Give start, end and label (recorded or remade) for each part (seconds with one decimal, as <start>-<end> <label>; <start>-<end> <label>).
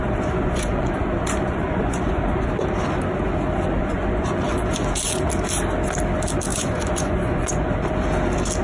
0.0-2.5 remade; 2.5-3.8 recorded; 3.8-5.2 remade; 5.2-6.5 recorded; 6.5-7.9 remade; 7.9-8.6 recorded